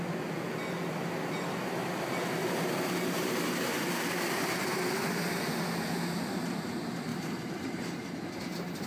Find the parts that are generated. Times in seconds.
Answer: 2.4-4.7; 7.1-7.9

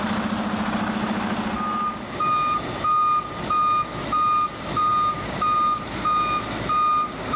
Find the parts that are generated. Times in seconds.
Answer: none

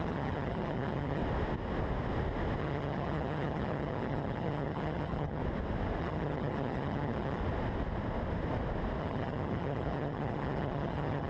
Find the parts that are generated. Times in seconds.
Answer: 0.0-1.2; 2.6-5.4; 6.0-7.4; 9.0-11.3

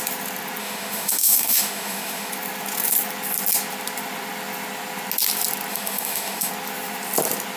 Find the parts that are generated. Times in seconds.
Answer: 0.6-2.3; 5.7-6.5

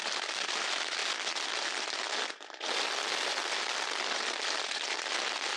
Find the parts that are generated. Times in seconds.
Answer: none

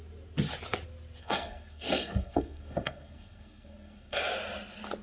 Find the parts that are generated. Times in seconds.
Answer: 1.2-4.2